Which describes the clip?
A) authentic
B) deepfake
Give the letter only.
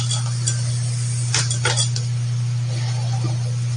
A